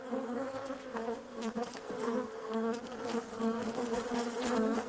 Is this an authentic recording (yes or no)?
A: no